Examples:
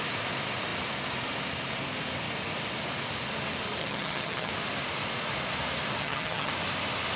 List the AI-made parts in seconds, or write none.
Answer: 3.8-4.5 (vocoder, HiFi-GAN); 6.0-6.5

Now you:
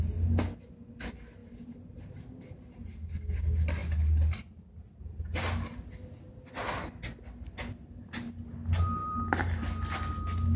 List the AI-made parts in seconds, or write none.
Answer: 9.0-9.6 (vocoder, BigVGAN v2)

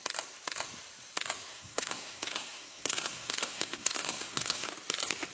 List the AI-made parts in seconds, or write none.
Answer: 1.5-4.7 (codec, SNAC)